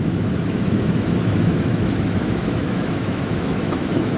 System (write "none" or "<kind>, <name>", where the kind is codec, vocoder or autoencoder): autoencoder, DAC-VAE